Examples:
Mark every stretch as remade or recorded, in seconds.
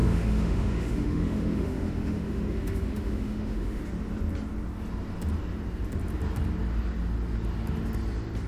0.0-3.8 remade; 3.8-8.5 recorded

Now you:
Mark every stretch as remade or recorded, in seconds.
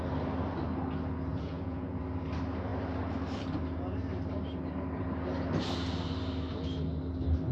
0.0-1.3 recorded; 1.3-2.0 remade; 2.0-7.5 recorded